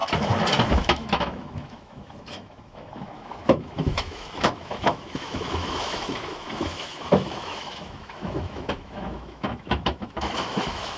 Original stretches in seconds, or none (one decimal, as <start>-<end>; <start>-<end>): 0.0-0.7